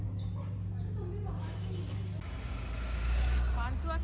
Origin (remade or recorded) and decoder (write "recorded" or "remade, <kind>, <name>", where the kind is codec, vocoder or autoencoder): recorded